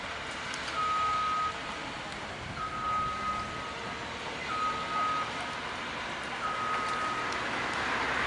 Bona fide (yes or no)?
yes